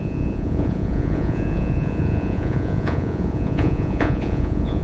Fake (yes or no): yes